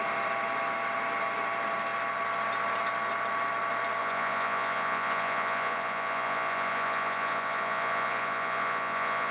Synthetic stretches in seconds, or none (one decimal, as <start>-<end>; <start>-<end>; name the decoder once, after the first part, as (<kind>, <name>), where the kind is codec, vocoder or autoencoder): 4.0-9.3 (vocoder, Vocos)